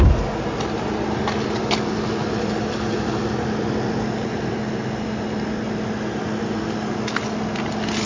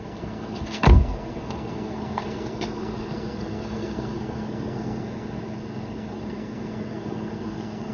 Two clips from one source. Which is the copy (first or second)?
second